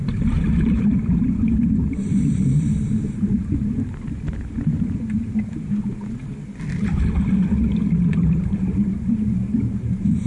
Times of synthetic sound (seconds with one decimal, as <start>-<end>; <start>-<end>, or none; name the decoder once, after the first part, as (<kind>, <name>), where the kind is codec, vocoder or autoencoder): 0.0-6.2 (vocoder, BigVGAN v2); 6.8-10.3